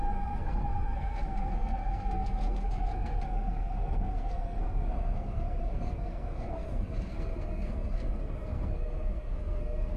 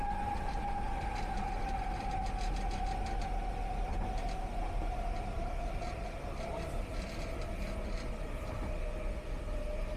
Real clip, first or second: second